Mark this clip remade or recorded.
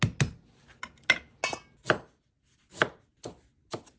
recorded